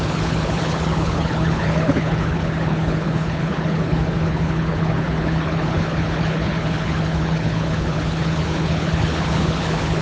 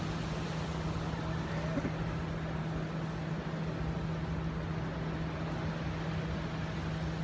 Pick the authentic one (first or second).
second